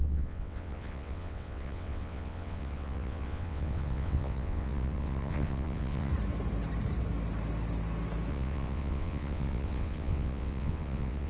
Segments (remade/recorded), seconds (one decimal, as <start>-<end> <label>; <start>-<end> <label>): 0.0-6.1 remade; 6.1-8.3 recorded; 8.3-11.3 remade